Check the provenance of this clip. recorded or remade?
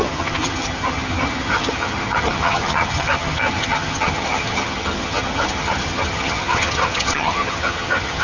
remade